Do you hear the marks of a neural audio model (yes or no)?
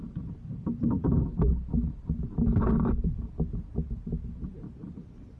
no